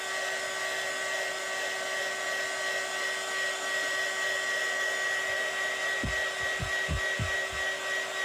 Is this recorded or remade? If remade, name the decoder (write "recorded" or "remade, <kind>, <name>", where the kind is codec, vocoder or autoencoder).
recorded